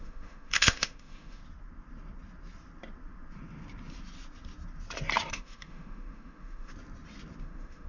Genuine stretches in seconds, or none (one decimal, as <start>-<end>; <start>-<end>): 1.4-5.3; 6.7-7.4